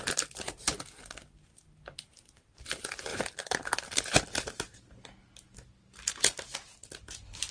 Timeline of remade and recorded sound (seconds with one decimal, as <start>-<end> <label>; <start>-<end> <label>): 0.0-7.5 recorded